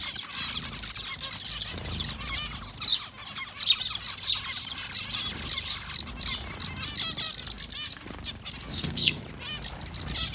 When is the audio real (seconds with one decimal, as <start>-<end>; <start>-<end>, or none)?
0.0-8.7; 9.2-10.3